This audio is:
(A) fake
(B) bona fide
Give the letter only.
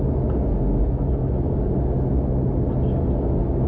B